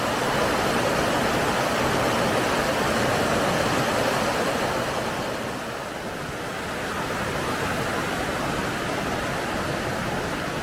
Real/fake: real